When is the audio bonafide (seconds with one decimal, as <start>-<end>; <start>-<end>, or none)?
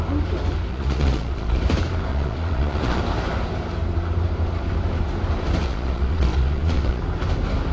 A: 0.0-0.7; 1.6-2.1; 3.0-5.6; 7.0-7.7